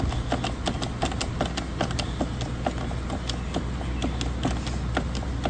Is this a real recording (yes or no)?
yes